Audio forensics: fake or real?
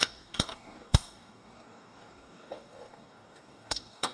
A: fake